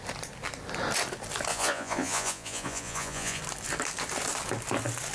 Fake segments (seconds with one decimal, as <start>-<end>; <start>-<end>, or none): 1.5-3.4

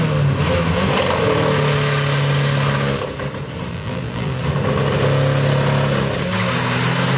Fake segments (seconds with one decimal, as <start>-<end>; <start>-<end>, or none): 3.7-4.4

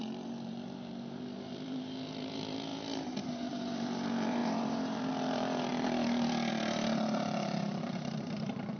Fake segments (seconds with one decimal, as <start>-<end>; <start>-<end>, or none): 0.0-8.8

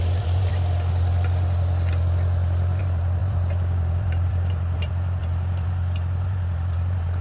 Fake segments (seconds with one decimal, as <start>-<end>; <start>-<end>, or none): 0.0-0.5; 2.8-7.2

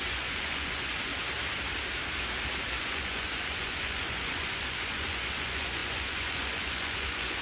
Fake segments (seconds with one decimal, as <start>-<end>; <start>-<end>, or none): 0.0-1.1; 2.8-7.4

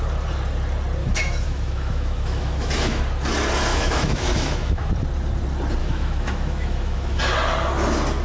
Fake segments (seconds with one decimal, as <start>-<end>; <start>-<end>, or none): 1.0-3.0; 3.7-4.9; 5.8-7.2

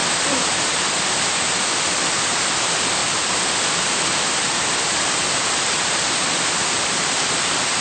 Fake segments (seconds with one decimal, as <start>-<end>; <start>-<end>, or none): 0.0-0.6; 3.0-7.8

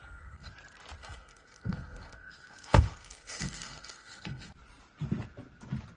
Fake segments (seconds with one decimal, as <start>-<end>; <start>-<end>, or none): 0.0-0.5; 1.0-4.5